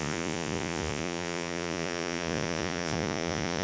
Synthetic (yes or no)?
yes